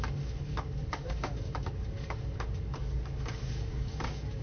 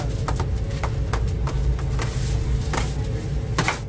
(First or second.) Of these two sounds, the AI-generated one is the first